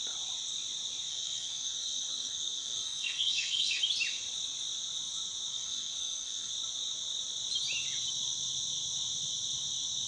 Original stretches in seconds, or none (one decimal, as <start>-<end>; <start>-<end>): 0.0-1.1; 3.8-5.5; 6.5-10.1